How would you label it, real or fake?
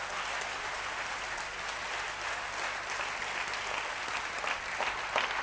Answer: real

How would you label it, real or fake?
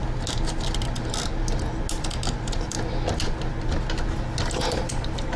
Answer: real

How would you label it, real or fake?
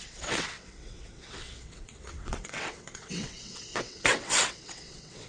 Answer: fake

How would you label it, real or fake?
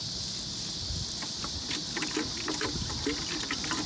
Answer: real